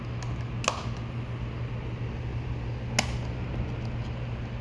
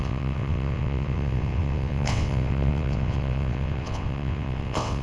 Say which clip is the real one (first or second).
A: first